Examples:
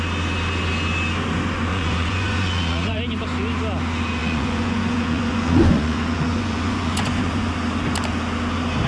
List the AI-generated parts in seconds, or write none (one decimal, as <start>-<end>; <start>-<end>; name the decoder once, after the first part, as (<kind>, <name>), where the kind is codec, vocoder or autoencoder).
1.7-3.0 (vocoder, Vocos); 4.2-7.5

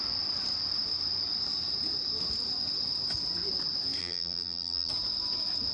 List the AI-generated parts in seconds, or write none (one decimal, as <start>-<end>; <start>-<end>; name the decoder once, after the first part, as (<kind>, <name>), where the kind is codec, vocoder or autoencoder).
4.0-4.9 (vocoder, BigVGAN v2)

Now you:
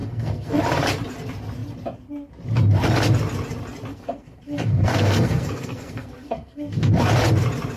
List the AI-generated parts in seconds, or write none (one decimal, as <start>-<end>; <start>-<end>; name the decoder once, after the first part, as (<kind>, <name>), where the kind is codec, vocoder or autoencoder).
0.0-0.6 (codec, SNAC); 3.9-6.9

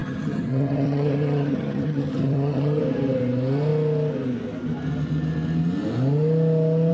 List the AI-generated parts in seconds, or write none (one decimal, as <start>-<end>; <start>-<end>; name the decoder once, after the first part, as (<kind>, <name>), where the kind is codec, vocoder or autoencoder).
0.0-2.8 (vocoder, HiFi-GAN)

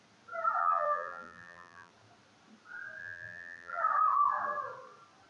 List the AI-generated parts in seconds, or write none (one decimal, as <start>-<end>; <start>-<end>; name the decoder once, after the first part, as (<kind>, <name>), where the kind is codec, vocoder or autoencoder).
0.6-1.9 (vocoder, BigVGAN v2); 3.0-3.8

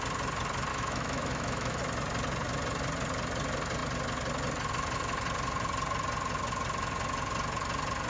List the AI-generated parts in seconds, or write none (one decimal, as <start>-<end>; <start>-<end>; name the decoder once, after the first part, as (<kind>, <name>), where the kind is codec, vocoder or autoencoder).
0.7-1.8 (autoencoder, DAC-VAE)